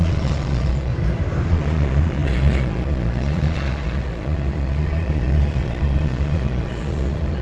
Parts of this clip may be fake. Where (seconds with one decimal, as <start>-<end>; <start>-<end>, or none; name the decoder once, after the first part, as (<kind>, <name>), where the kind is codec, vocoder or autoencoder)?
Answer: 0.0-0.9 (vocoder, Vocos); 1.5-7.4